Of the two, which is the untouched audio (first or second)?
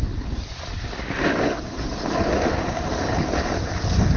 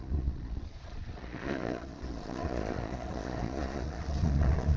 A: first